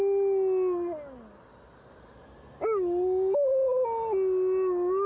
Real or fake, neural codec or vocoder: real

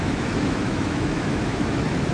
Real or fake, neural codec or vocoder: fake, autoencoder, DAC-VAE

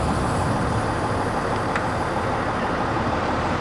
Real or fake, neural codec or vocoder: real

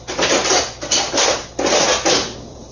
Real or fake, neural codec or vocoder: real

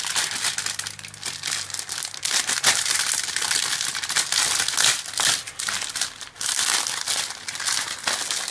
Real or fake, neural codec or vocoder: real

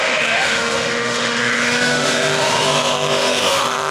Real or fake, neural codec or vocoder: fake, autoencoder, DAC-VAE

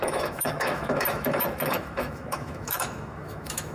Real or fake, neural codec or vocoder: fake, autoencoder, DAC-VAE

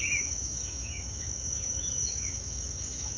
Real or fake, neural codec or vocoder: fake, autoencoder, DAC-VAE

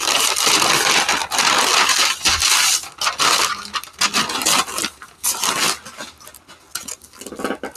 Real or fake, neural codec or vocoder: real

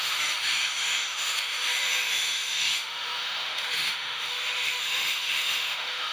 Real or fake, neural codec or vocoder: fake, autoencoder, DAC-VAE